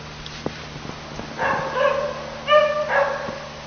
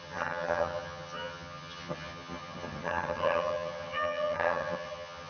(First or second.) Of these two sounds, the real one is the first